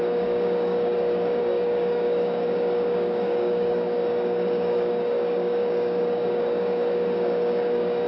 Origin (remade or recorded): remade